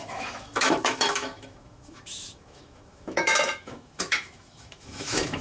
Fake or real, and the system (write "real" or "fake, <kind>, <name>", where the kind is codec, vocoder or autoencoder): fake, autoencoder, DAC-VAE